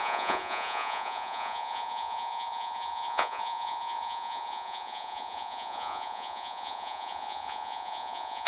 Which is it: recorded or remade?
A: remade